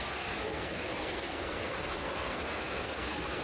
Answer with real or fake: fake